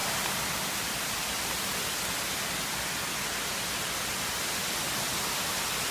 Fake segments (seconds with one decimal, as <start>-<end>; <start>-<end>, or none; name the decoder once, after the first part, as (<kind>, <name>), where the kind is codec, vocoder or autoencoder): none